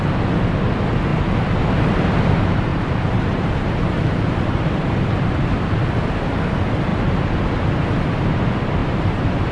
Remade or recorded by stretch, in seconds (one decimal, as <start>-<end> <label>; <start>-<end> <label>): 0.0-2.7 recorded; 2.7-5.8 remade; 5.8-8.8 recorded; 8.8-9.5 remade